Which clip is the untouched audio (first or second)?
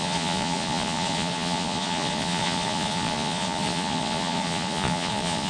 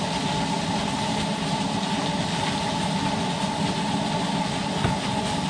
second